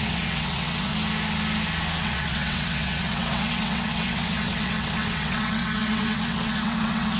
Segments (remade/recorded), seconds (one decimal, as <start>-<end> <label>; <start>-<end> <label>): 0.0-0.9 remade; 0.9-2.0 recorded; 2.0-7.2 remade